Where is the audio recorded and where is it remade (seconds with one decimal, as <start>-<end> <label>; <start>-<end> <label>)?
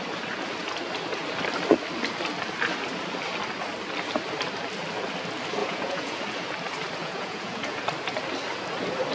0.0-5.6 recorded; 5.6-6.2 remade; 6.2-7.0 recorded; 7.0-7.8 remade; 7.8-9.1 recorded